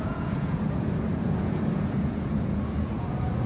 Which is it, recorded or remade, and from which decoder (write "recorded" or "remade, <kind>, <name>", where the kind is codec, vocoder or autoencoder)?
remade, vocoder, Vocos